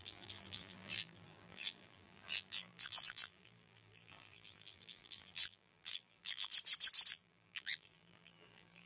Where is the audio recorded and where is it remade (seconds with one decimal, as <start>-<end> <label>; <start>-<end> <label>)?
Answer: 0.0-6.5 remade; 6.5-7.1 recorded; 7.1-8.9 remade